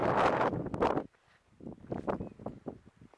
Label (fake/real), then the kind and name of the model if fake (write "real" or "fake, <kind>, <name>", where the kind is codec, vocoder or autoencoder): real